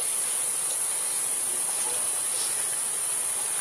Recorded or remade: recorded